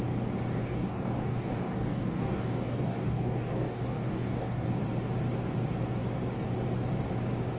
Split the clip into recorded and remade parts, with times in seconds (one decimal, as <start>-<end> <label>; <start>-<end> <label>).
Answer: 0.0-0.6 recorded; 0.6-4.8 remade; 4.8-7.6 recorded